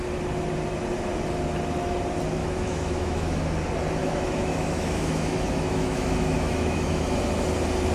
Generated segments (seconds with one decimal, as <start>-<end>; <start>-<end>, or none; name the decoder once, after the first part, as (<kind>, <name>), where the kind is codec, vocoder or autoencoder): 2.4-3.4 (autoencoder, DAC-VAE); 4.0-7.2